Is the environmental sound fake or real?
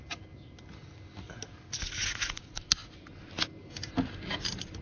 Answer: real